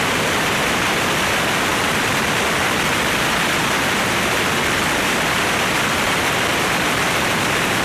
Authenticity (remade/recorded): remade